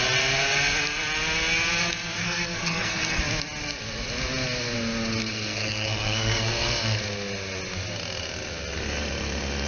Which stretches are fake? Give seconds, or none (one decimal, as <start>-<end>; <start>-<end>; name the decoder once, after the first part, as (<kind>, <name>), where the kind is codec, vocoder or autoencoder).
2.2-3.2 (codec, SNAC); 5.2-7.0